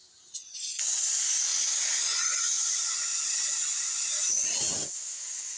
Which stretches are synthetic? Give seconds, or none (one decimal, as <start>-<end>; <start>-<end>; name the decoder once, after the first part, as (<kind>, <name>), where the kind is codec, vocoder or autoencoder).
1.5-2.7 (vocoder, Vocos); 3.1-4.1